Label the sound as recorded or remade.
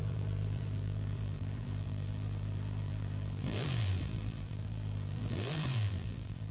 remade